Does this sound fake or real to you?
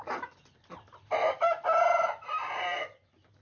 real